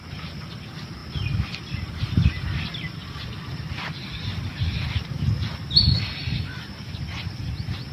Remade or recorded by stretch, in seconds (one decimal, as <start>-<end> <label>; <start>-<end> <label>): 0.0-7.9 recorded